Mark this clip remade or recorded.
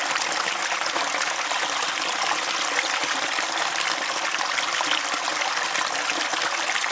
recorded